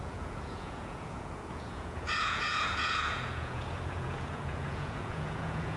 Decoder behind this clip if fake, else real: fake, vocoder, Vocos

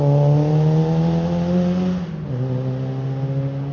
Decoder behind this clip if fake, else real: real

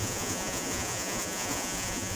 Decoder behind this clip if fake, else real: fake, vocoder, Vocos